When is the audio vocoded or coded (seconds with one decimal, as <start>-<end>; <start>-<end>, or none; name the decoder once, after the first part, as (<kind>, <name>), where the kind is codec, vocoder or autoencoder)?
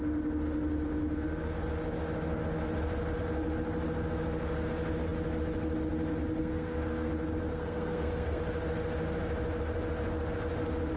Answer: 6.4-7.1 (codec, SNAC); 7.5-8.4